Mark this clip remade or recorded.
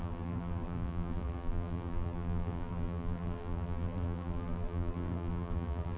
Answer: remade